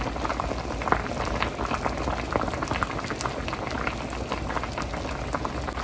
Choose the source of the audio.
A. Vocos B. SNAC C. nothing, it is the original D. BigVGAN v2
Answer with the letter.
C